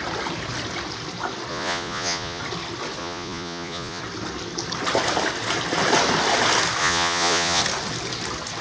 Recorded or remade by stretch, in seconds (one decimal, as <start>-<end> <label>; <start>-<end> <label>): 0.0-1.5 recorded; 1.5-2.4 remade; 2.4-3.0 recorded; 3.0-4.0 remade; 4.0-6.8 recorded; 6.8-7.6 remade; 7.6-8.6 recorded